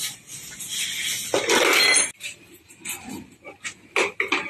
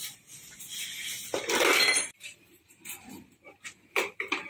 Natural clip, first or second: first